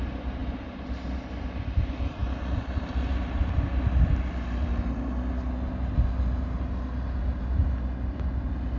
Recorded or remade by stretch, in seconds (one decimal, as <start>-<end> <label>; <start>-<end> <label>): 0.0-8.8 recorded